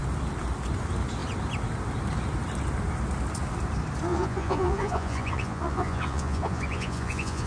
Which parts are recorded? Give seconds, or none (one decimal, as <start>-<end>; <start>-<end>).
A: 0.0-4.1